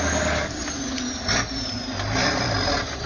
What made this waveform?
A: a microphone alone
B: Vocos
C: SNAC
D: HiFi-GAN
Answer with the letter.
A